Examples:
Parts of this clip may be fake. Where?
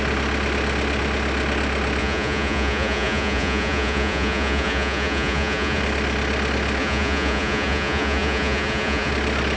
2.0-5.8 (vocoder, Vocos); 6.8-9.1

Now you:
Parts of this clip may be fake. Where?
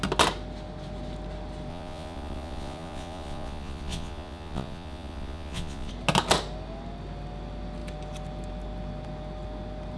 1.7-5.9 (vocoder, Vocos)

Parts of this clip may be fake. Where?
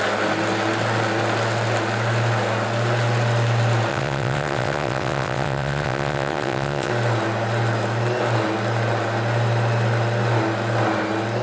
3.9-6.9 (vocoder, WaveNeXt)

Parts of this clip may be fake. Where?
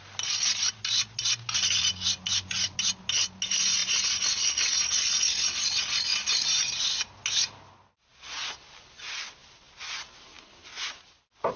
none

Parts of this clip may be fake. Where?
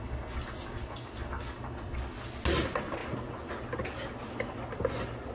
3.0-3.5 (vocoder, BigVGAN v2)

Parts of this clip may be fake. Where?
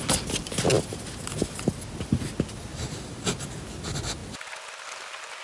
none